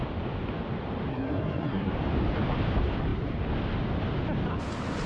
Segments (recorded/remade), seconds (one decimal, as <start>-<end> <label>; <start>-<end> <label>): 0.0-1.1 recorded; 1.1-1.9 remade; 1.9-5.1 recorded